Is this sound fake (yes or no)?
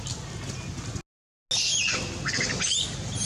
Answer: no